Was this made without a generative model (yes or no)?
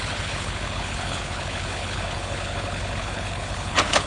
no